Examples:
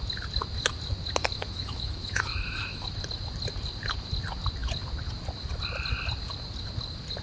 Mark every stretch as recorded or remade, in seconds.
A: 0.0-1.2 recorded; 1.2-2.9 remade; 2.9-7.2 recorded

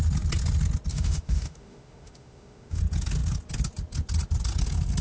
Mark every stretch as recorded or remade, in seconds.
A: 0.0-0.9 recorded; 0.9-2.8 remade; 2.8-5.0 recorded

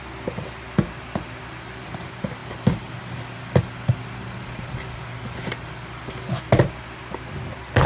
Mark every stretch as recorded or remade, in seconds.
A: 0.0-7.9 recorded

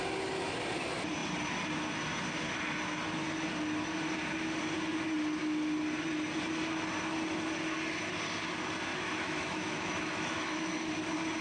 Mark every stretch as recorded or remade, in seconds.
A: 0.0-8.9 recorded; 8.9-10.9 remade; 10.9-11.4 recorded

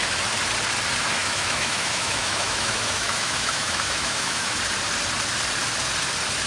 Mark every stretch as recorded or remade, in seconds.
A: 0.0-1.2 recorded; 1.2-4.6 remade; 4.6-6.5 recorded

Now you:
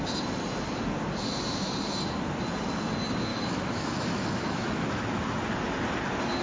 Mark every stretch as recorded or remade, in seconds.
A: 0.0-3.3 recorded; 3.3-5.2 remade; 5.2-6.4 recorded

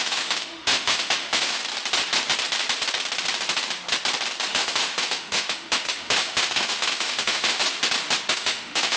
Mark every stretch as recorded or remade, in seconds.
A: 0.0-1.6 remade; 1.6-4.5 recorded; 4.5-7.6 remade; 7.6-8.3 recorded; 8.3-9.0 remade

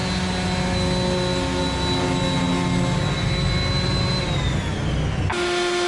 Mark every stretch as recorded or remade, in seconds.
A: 0.0-5.9 recorded